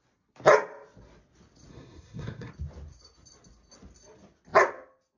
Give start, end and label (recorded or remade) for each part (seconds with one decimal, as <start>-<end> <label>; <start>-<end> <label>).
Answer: 0.0-1.7 recorded; 1.7-2.5 remade; 2.5-5.2 recorded